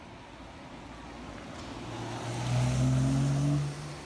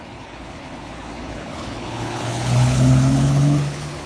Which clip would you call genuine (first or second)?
first